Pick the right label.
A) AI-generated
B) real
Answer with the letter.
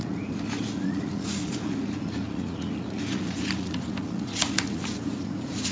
A